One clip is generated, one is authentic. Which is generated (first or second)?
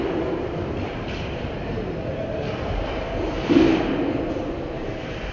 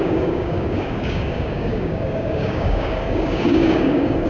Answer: second